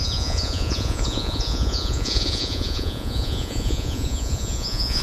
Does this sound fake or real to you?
fake